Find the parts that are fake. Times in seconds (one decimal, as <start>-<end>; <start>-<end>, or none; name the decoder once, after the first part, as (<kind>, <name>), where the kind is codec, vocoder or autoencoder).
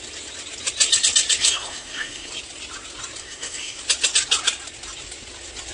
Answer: 1.4-2.3 (codec, SNAC); 3.2-3.8